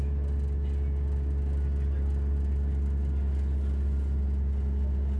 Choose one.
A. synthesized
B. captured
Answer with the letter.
B